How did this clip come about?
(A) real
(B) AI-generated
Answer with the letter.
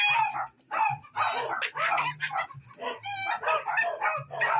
A